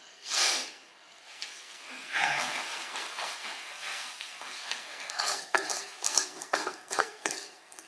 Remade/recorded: remade